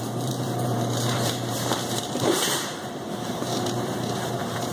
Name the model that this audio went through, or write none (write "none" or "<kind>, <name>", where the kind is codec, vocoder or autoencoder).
vocoder, BigVGAN v2